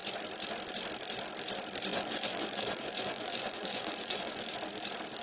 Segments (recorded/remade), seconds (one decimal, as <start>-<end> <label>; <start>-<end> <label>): 0.0-1.9 recorded; 1.9-4.5 remade; 4.5-5.2 recorded